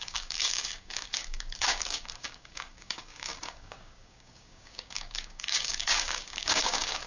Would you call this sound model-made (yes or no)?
yes